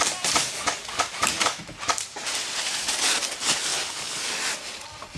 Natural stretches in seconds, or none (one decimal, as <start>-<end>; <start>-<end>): 0.0-0.4; 1.6-3.7; 4.3-5.2